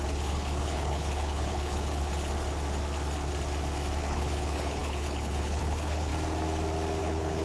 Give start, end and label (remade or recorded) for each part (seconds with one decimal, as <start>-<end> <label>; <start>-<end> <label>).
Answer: 0.0-2.1 remade; 2.1-4.0 recorded; 4.0-6.1 remade; 6.1-7.0 recorded; 7.0-7.4 remade